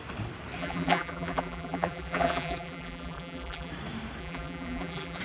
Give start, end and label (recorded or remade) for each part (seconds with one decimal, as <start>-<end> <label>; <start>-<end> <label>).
0.0-0.6 recorded; 0.6-3.7 remade; 3.7-4.2 recorded; 4.2-5.2 remade